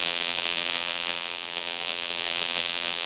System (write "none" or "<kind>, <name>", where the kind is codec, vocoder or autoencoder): vocoder, BigVGAN v2